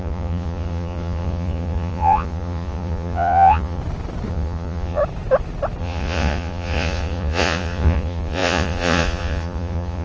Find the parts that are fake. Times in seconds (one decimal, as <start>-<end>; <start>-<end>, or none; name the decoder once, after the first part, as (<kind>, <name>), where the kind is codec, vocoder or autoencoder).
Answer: 0.0-3.8 (vocoder, Vocos); 4.3-5.0; 5.8-10.0